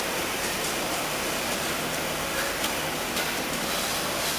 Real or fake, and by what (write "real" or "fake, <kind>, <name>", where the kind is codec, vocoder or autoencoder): real